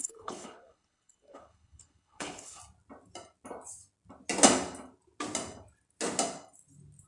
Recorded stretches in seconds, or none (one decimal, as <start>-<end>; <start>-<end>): 2.6-7.1